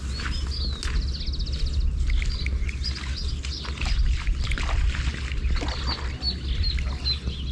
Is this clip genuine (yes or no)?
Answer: yes